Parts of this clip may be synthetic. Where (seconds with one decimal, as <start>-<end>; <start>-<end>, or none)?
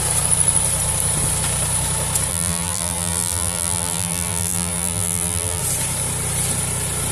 2.3-5.6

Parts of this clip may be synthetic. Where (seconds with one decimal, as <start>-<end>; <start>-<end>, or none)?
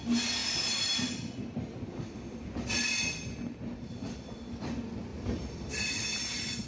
0.4-2.7; 5.1-5.7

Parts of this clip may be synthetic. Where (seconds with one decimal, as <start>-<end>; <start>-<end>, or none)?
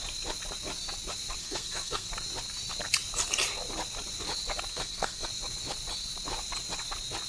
1.4-2.1; 4.7-5.3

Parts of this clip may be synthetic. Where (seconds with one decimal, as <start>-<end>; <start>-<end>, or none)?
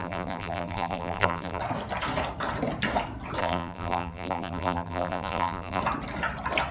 0.0-1.6; 3.4-5.8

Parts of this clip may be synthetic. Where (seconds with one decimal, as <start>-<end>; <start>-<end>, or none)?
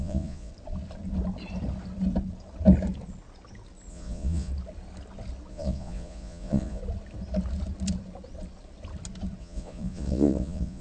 0.0-0.5; 3.9-4.5; 5.5-6.8; 9.4-10.8